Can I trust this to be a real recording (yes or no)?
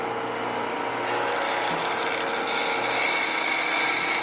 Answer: yes